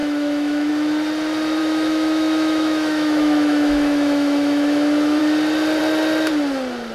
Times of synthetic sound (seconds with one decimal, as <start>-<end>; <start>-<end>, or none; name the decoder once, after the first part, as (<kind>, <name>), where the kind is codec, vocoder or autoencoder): 0.0-0.7 (autoencoder, DAC-VAE); 1.6-5.2